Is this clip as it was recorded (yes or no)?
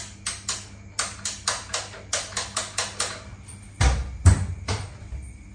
yes